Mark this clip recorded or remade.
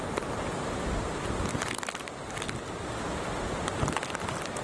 recorded